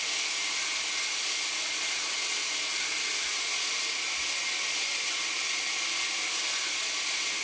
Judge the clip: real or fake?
real